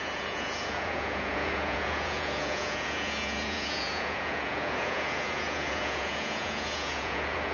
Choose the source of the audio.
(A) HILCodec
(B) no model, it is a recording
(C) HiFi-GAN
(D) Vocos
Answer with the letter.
D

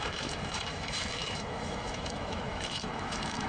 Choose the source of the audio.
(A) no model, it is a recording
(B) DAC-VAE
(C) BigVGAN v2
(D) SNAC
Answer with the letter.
B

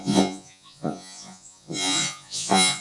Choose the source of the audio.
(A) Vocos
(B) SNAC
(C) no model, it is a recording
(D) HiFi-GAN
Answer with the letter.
A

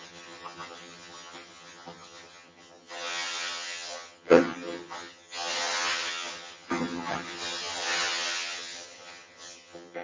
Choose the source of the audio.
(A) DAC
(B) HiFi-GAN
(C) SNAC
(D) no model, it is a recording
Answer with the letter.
B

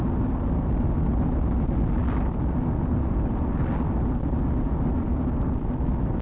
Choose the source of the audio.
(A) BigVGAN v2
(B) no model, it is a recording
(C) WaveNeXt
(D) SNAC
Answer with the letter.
B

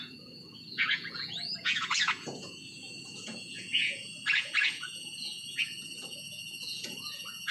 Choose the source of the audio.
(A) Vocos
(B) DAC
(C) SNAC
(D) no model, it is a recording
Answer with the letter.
A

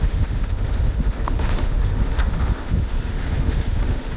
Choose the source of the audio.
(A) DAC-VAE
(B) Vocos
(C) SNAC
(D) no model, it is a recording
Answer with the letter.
A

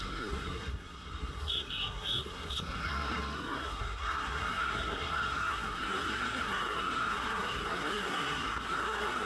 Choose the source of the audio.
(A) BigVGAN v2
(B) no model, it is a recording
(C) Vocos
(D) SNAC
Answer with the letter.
D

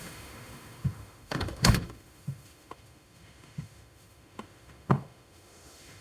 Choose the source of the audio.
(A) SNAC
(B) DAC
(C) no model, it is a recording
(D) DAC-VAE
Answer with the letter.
D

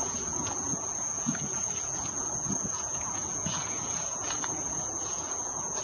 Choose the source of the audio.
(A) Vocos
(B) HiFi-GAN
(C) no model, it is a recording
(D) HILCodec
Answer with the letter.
A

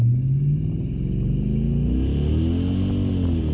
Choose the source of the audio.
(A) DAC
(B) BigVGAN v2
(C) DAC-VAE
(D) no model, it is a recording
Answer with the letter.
D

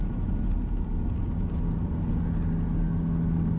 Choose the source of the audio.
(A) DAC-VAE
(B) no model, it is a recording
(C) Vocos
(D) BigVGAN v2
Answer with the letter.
B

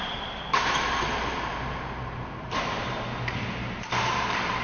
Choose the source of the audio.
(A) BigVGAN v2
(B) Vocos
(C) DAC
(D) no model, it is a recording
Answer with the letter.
A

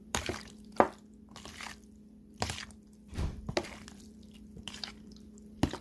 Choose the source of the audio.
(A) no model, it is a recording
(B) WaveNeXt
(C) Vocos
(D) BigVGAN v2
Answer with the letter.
D